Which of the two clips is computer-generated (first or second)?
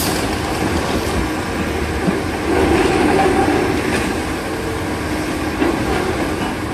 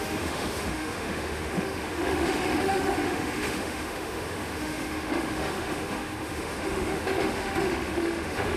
second